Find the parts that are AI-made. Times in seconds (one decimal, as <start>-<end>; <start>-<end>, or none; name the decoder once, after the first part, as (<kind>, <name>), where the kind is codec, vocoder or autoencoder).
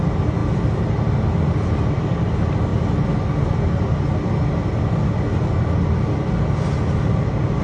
none